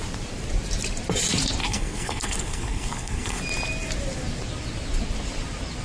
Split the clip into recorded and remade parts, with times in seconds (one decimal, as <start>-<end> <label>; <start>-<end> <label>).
0.0-1.6 recorded; 1.6-3.4 remade; 3.4-5.8 recorded